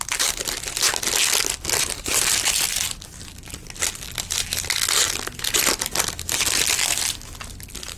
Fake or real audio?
real